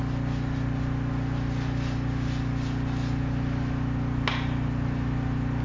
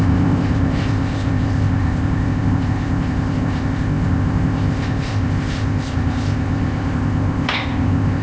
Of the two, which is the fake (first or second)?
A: second